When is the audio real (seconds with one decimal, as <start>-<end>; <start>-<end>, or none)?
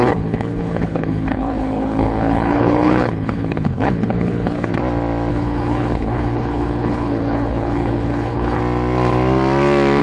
4.7-5.3; 8.6-10.0